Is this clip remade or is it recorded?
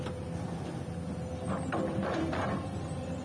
recorded